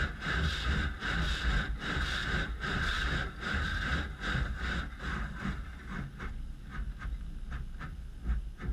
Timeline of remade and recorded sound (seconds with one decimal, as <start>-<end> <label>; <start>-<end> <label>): 0.0-8.7 recorded